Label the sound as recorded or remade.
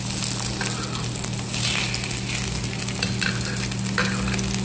recorded